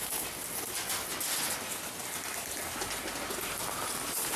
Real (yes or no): yes